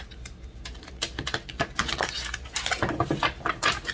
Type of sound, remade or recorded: recorded